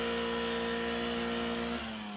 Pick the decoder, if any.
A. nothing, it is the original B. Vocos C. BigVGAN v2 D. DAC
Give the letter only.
A